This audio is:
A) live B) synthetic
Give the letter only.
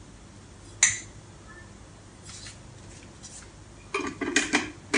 A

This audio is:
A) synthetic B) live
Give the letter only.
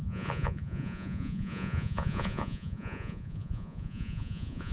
A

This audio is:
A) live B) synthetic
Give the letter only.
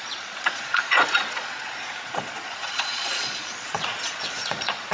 B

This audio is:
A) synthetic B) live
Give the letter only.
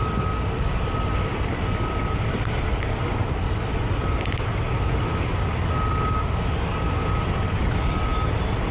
B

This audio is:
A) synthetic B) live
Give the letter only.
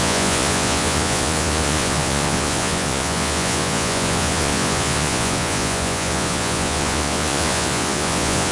A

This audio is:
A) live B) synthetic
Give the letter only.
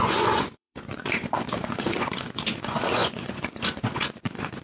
B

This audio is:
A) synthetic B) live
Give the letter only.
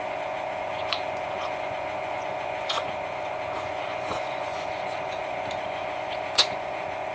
A